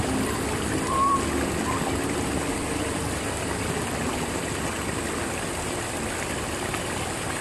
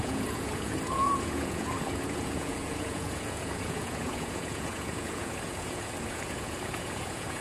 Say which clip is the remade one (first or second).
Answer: second